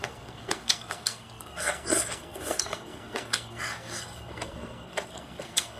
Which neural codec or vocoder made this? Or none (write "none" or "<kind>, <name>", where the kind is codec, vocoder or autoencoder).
codec, SNAC